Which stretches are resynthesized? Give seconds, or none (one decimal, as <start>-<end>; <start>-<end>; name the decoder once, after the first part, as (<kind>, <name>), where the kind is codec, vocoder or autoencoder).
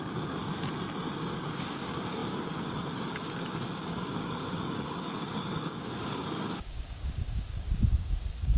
0.0-0.4 (codec, DAC); 1.1-8.6